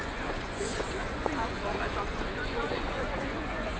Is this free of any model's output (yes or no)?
no